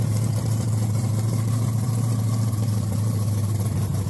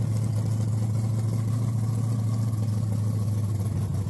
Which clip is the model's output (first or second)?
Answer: first